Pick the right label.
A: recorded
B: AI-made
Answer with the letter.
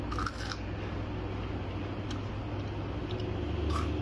A